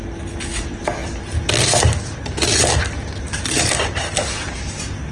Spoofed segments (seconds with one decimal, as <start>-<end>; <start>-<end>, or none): none